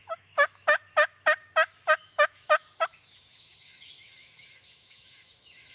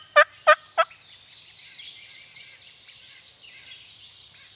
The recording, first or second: second